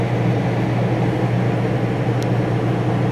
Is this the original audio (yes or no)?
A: yes